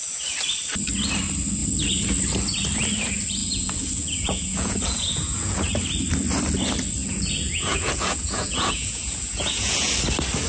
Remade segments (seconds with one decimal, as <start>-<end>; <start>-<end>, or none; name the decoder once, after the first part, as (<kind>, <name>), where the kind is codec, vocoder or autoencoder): 3.4-5.7 (vocoder, Vocos); 7.0-9.9

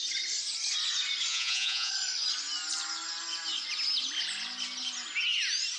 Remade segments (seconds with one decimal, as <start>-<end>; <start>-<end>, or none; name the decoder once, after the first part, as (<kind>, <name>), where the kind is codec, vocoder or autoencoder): 1.3-1.9 (vocoder, Vocos)

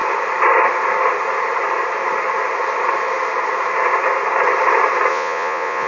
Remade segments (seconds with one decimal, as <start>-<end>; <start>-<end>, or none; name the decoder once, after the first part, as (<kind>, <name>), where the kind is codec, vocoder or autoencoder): 5.1-5.9 (vocoder, Vocos)

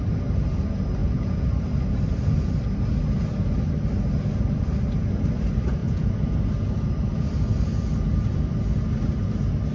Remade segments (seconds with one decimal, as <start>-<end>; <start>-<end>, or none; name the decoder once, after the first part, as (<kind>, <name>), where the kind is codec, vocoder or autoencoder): 1.0-1.5 (vocoder, Vocos); 5.8-6.3

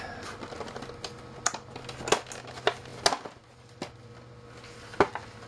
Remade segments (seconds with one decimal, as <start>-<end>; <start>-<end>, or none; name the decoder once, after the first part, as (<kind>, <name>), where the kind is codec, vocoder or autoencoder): none

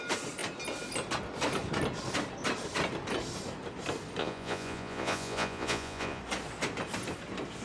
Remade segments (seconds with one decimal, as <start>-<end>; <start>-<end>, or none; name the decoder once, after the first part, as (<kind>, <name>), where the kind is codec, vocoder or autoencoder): 4.2-6.2 (vocoder, Vocos)